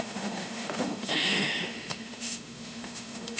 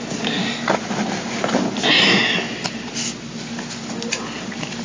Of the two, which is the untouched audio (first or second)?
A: second